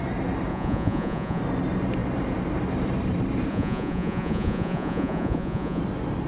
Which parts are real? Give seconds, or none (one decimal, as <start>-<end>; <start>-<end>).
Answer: 0.0-0.5; 1.4-3.5; 5.8-6.3